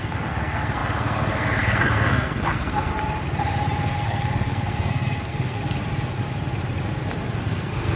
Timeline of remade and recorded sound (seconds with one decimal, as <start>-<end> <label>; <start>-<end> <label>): 0.0-2.9 remade; 2.9-3.8 recorded; 3.8-5.6 remade; 5.6-7.4 recorded; 7.4-8.0 remade